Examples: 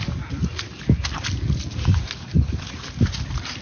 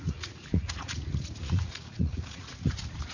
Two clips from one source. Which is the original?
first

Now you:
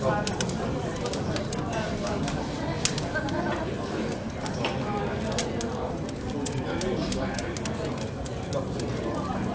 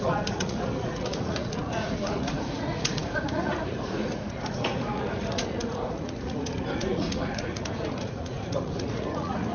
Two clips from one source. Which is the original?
first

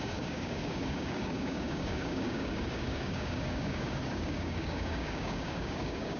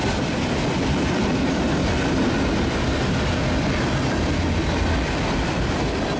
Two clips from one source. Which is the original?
second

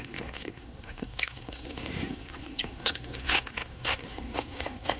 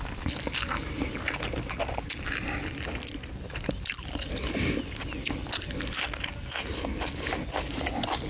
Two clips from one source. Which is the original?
second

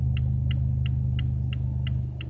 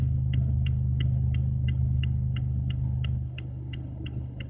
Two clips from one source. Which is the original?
first